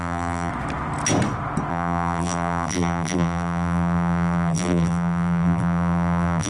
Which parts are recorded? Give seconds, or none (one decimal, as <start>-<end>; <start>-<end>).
0.5-1.7